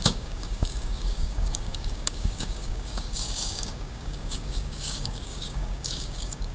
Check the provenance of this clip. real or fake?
fake